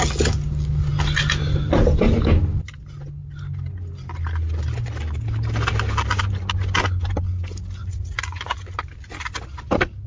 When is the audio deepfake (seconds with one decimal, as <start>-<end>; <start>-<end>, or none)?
7.8-8.6